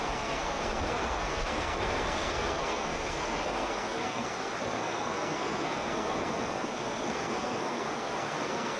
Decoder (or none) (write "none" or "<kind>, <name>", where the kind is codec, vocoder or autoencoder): codec, SNAC